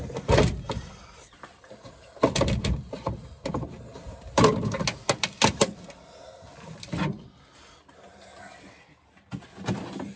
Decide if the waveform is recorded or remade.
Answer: recorded